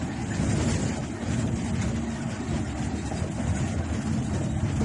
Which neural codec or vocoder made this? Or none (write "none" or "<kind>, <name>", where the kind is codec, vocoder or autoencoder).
none